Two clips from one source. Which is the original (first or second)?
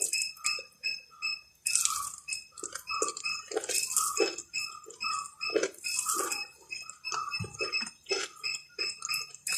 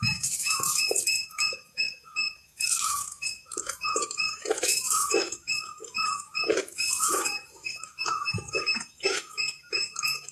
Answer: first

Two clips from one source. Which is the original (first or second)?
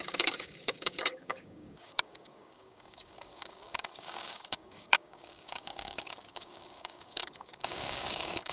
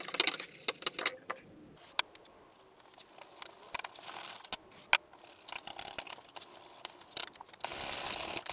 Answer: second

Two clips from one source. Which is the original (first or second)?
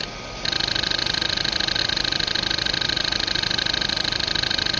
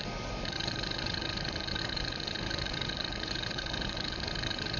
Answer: first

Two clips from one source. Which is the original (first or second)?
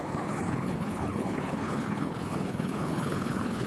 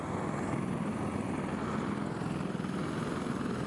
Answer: second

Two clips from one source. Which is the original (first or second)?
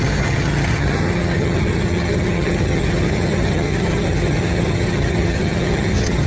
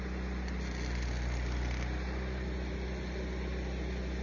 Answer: second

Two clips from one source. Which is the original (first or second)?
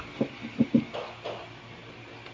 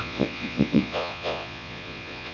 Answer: first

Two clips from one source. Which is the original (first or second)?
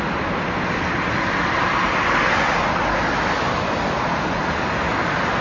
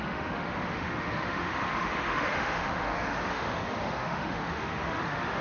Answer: first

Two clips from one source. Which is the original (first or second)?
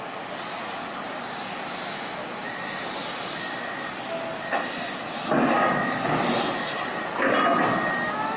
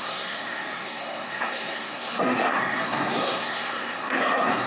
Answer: first